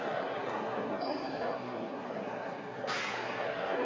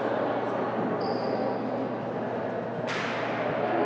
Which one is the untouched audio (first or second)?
second